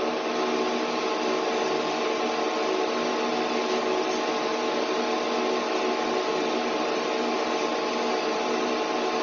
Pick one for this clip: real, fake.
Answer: real